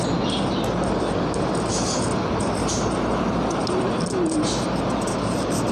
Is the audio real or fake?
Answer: real